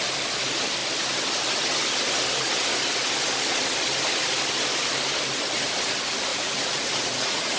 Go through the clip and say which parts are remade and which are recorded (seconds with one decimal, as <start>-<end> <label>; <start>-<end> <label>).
0.0-6.3 recorded; 6.3-7.6 remade